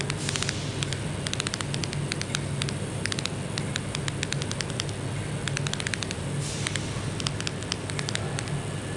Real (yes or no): yes